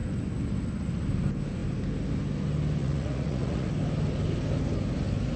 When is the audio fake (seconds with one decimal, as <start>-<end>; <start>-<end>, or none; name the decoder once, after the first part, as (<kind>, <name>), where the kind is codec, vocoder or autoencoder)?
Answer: 2.8-3.7 (vocoder, Vocos)